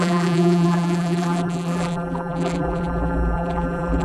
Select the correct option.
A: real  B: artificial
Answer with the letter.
B